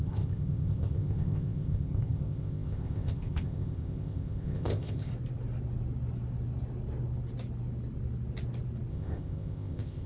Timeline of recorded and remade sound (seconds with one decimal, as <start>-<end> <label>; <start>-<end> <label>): 0.0-5.1 remade; 5.1-8.9 recorded; 8.9-10.1 remade